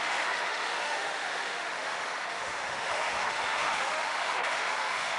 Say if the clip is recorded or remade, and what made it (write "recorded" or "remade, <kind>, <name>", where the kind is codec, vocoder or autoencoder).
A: remade, autoencoder, DAC-VAE